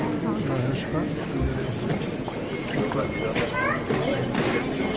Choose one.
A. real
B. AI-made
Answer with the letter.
A